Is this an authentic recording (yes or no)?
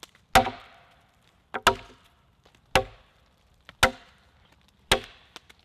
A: yes